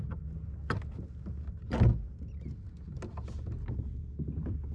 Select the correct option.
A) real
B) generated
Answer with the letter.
A